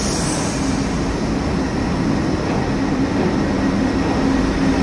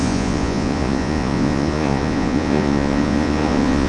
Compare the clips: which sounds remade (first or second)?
second